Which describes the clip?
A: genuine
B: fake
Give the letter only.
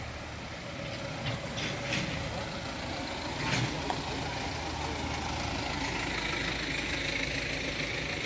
A